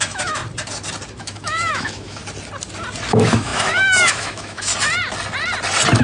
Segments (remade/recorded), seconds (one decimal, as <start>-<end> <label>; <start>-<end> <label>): 0.0-0.4 remade; 0.4-1.2 recorded; 1.2-2.2 remade; 2.2-3.1 recorded; 3.1-4.7 remade; 4.7-6.0 recorded